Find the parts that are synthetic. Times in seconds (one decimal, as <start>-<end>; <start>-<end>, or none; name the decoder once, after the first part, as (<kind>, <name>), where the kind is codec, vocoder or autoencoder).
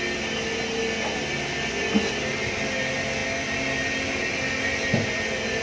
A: none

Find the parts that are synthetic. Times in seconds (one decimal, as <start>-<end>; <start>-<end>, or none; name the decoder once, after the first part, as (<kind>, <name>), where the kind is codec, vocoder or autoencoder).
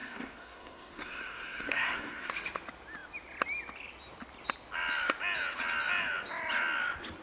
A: 0.0-2.3 (codec, SNAC)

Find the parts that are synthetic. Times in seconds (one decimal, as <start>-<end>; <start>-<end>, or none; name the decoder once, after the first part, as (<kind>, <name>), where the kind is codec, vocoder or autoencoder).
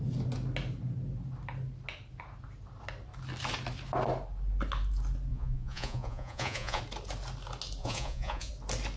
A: 5.3-6.8 (vocoder, Vocos); 7.8-8.5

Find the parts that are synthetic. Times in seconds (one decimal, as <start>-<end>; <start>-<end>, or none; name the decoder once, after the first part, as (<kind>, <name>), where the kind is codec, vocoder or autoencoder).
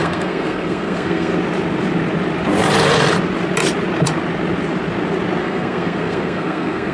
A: 0.0-1.3 (codec, SNAC); 5.4-6.9